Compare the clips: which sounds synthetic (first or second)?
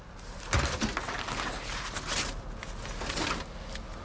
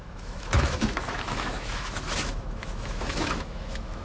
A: second